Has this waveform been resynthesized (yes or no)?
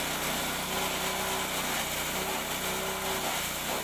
no